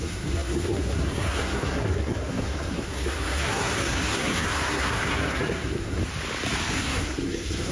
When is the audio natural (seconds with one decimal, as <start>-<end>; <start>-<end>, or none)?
6.0-6.7